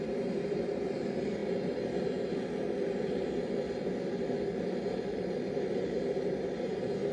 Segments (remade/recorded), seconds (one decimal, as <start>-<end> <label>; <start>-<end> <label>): 0.0-1.4 remade; 1.4-5.0 recorded; 5.0-7.1 remade